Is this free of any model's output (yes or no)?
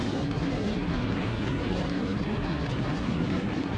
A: no